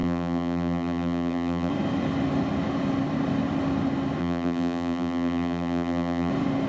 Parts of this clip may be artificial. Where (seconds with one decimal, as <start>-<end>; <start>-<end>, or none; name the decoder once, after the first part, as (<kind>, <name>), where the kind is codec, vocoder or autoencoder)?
0.0-1.7 (vocoder, BigVGAN v2); 4.2-6.3